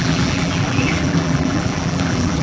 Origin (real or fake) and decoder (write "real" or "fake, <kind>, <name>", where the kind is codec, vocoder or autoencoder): fake, vocoder, BigVGAN v2